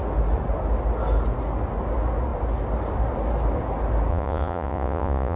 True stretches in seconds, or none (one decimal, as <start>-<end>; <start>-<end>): 0.0-4.1